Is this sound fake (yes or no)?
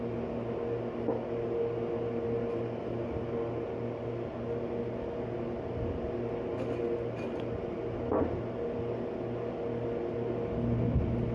no